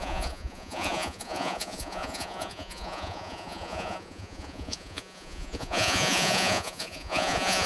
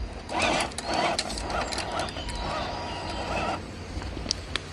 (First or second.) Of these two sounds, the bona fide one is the second